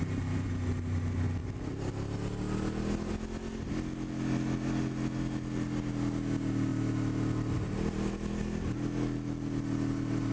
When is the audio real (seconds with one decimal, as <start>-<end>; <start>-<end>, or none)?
0.0-10.3